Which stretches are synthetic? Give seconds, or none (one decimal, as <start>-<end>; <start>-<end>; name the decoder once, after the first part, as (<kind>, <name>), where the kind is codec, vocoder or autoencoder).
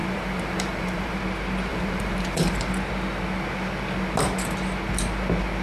0.0-1.2 (vocoder, BigVGAN v2); 1.7-2.6